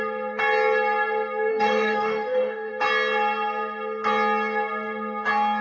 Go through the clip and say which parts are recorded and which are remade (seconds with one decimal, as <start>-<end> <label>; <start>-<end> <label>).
0.0-1.5 recorded; 1.5-2.7 remade; 2.7-5.6 recorded